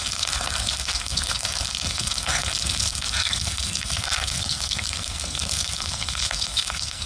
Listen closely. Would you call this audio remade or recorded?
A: remade